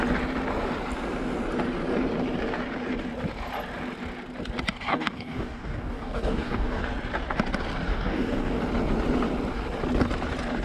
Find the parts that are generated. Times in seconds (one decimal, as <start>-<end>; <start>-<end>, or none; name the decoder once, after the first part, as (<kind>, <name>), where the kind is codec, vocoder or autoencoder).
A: 4.9-6.8 (codec, DAC); 7.9-8.6